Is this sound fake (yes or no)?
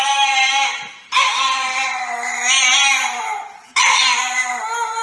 yes